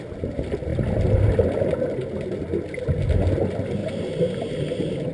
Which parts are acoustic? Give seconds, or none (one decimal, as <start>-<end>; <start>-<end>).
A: 0.0-5.1